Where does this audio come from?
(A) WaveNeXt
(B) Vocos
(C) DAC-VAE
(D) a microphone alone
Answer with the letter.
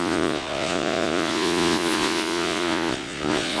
B